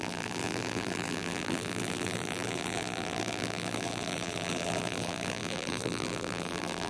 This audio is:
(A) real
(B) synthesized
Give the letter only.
B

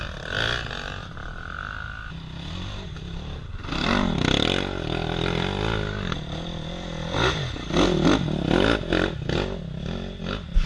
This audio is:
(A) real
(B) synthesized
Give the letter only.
A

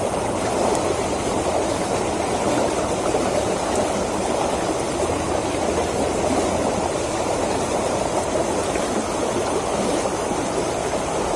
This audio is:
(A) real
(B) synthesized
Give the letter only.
A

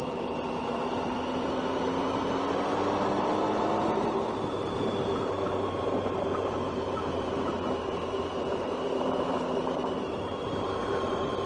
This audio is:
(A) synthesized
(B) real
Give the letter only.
A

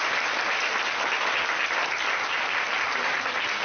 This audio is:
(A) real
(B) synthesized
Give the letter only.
A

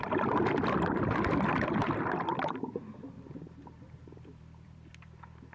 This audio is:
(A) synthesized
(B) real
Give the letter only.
A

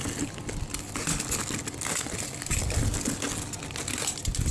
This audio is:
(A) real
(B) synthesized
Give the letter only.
A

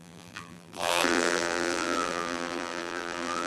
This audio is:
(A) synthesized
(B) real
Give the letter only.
A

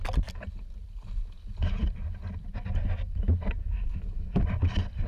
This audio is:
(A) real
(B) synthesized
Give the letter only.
A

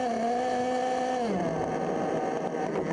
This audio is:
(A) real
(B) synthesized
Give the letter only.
A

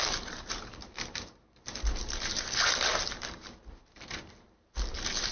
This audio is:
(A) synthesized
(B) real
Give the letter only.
A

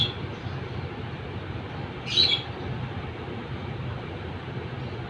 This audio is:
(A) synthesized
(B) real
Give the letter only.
B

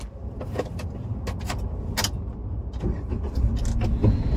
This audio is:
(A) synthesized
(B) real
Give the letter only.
B